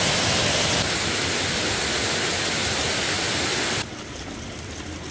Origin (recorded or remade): recorded